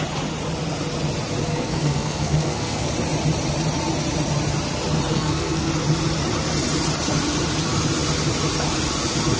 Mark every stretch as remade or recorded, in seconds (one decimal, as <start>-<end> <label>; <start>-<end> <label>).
0.0-1.5 recorded; 1.5-2.9 remade; 2.9-5.1 recorded; 5.1-5.7 remade; 5.7-9.4 recorded

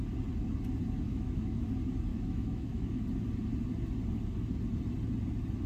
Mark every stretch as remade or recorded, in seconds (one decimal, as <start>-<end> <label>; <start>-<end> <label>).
0.0-1.1 recorded; 1.1-1.7 remade; 1.7-2.1 recorded; 2.1-3.0 remade; 3.0-5.7 recorded

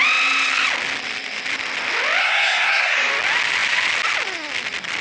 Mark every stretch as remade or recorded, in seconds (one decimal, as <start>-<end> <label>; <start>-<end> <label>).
0.0-2.2 recorded; 2.2-3.1 remade; 3.1-5.0 recorded

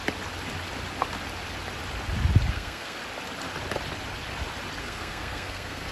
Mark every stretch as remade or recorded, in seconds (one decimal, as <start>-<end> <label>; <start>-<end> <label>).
0.0-2.5 recorded; 2.5-3.0 remade; 3.0-4.8 recorded; 4.8-5.9 remade